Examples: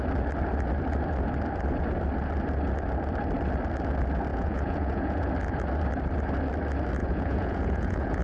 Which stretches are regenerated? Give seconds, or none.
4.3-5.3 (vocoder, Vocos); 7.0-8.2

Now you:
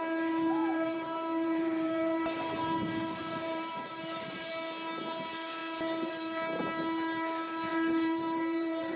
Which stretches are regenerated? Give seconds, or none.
0.6-4.5 (vocoder, BigVGAN v2); 7.7-9.0

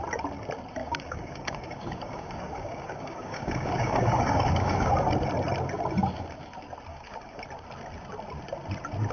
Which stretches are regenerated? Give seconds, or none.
0.8-4.9 (codec, DAC); 6.9-7.4

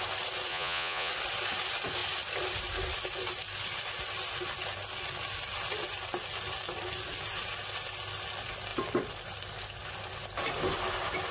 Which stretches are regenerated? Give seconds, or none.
0.5-1.1 (vocoder, Vocos)